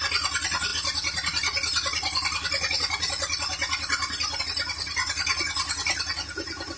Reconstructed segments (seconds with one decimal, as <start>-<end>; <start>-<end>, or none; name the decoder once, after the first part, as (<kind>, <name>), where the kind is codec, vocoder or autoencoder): none